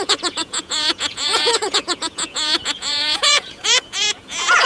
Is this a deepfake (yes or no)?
yes